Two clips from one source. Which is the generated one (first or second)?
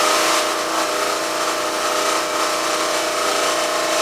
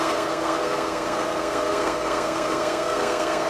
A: second